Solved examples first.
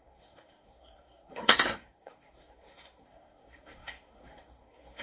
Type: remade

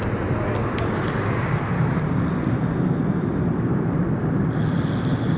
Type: recorded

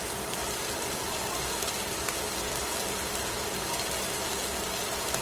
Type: recorded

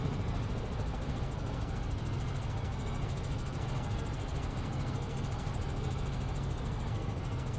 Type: remade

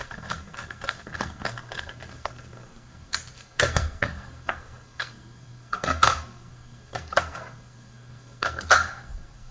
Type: remade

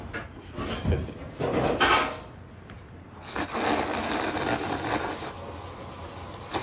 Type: recorded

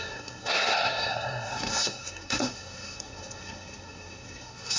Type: remade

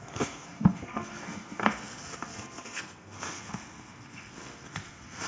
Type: remade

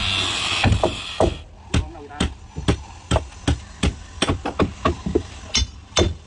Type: recorded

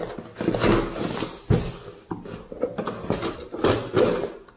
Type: recorded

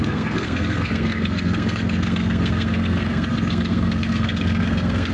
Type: remade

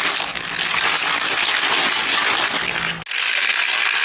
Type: recorded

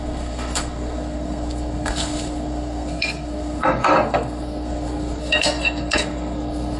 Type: remade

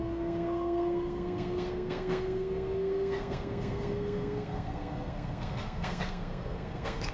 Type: remade